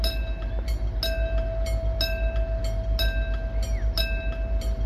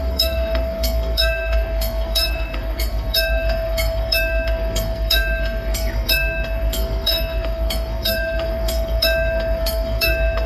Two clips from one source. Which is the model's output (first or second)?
second